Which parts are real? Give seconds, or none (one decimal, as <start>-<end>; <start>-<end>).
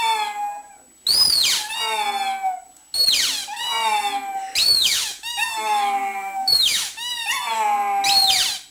0.0-4.6; 7.1-8.7